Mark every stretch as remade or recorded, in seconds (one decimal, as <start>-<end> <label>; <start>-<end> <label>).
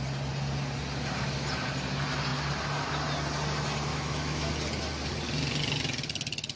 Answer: 0.0-3.9 recorded; 3.9-4.5 remade; 4.5-6.6 recorded